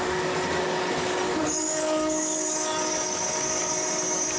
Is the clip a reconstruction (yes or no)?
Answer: yes